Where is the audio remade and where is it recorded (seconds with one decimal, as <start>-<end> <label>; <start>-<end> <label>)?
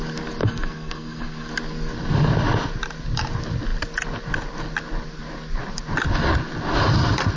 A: 0.0-0.4 recorded; 0.4-1.5 remade; 1.5-7.4 recorded